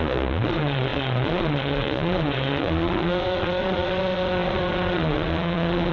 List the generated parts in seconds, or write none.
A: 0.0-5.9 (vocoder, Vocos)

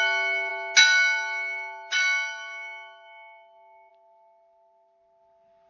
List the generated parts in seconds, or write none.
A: none